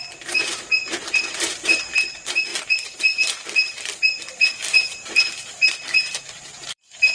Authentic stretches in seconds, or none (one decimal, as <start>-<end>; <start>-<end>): 0.0-0.9